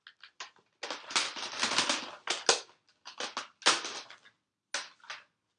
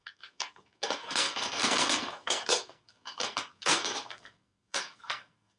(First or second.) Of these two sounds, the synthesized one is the second